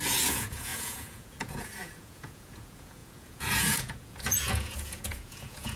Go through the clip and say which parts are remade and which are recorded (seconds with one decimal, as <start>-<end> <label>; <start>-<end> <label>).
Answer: 0.0-5.8 remade